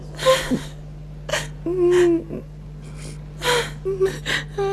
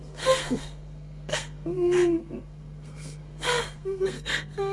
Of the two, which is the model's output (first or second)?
second